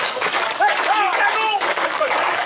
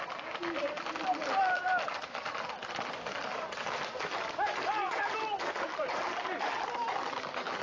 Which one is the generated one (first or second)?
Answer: first